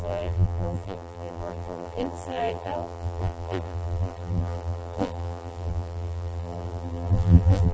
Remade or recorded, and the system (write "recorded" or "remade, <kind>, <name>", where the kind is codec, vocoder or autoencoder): remade, vocoder, BigVGAN v2